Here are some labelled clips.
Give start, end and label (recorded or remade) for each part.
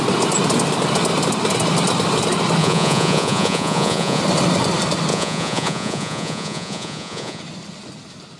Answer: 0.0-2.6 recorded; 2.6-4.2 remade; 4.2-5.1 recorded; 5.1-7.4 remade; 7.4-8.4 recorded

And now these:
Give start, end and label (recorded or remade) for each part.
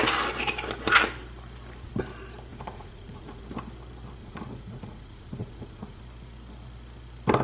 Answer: 0.0-2.5 recorded; 2.5-3.4 remade; 3.4-4.2 recorded; 4.2-6.0 remade; 6.0-7.4 recorded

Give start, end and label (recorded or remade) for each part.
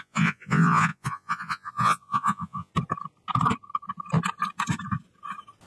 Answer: 0.0-2.7 remade; 2.7-5.7 recorded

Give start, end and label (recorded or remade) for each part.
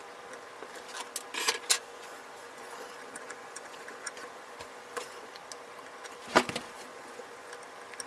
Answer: 0.0-1.7 recorded; 1.7-5.3 remade; 5.3-6.9 recorded; 6.9-7.5 remade; 7.5-8.1 recorded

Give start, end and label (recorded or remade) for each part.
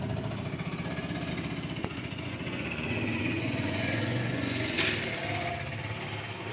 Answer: 0.0-1.8 recorded; 1.8-4.8 remade; 4.8-6.5 recorded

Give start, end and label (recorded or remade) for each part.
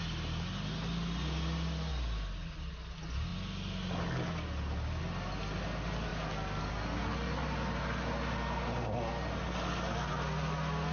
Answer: 0.0-10.9 recorded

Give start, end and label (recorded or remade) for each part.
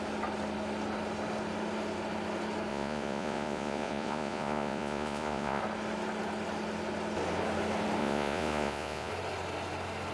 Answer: 0.0-2.7 recorded; 2.7-5.6 remade; 5.6-8.0 recorded; 8.0-9.1 remade; 9.1-10.1 recorded